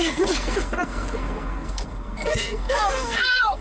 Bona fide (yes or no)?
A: no